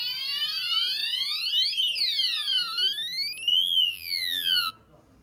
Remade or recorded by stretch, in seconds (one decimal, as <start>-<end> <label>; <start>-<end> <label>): 0.0-3.5 recorded; 3.5-4.7 remade; 4.7-5.2 recorded

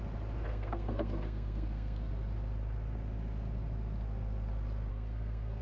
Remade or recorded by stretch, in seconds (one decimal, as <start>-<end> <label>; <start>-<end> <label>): 0.0-0.5 recorded; 0.5-2.1 remade; 2.1-4.9 recorded; 4.9-5.6 remade

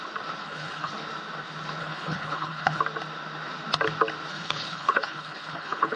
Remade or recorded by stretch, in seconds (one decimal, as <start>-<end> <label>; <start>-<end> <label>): 0.0-0.4 recorded; 0.4-0.9 remade; 0.9-1.8 recorded; 1.8-2.8 remade; 2.8-4.3 recorded; 4.3-6.0 remade

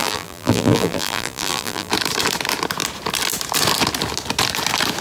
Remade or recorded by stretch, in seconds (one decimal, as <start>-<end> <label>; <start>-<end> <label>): 0.0-1.9 remade; 1.9-5.0 recorded

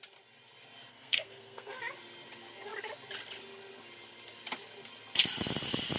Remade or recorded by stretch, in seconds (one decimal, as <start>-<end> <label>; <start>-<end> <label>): 0.0-0.9 recorded; 0.9-1.8 remade; 1.8-6.0 recorded

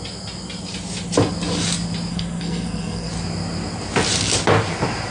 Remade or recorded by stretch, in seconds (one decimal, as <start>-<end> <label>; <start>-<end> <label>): 0.0-2.1 recorded; 2.1-3.1 remade; 3.1-5.1 recorded